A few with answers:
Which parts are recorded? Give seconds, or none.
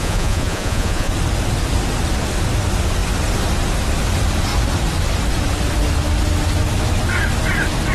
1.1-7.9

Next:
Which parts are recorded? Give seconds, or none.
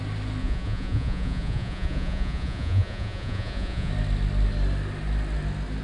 0.0-0.4; 3.9-5.8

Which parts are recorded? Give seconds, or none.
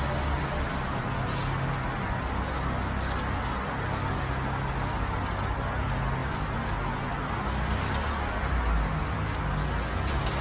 0.0-10.4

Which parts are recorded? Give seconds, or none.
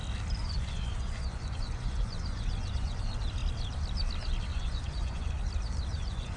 0.0-0.4; 3.0-4.5; 5.3-5.9